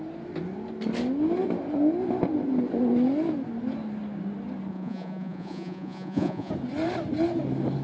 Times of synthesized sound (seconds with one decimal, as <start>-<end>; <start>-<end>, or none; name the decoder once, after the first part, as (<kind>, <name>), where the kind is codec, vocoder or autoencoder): 4.7-6.5 (vocoder, Vocos)